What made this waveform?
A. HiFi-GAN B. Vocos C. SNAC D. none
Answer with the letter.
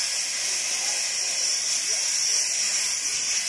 D